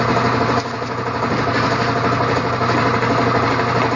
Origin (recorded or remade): recorded